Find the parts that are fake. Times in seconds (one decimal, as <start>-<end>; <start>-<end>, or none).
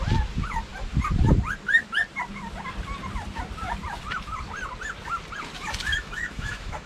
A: 5.9-6.9